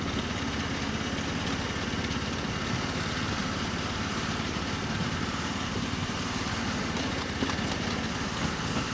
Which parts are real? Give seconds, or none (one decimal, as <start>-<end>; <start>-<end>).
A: 0.0-3.4; 7.9-8.9

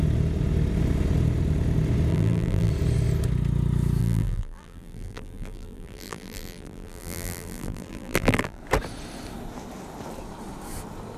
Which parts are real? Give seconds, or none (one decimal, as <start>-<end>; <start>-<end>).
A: 0.0-2.1; 2.7-4.0; 8.6-11.2

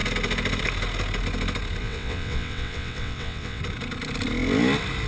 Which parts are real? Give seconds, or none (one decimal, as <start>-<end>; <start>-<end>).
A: 0.0-1.8; 3.6-5.1

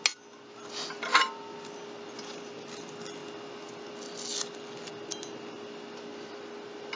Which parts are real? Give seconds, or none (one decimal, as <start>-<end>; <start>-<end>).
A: 0.0-7.0

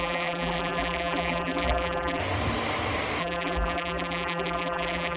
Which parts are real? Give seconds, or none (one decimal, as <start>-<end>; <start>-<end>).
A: 2.2-3.2

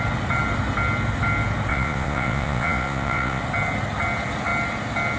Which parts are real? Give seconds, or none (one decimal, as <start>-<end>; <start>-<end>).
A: 0.0-1.7; 3.4-5.2

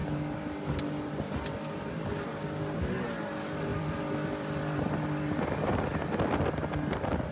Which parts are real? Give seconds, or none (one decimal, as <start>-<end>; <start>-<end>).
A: 0.0-3.7; 6.2-7.3

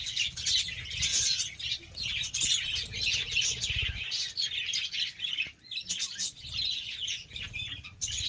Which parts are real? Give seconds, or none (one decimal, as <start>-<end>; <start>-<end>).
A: 0.0-8.3